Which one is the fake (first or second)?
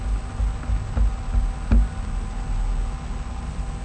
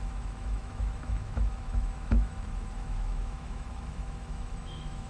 second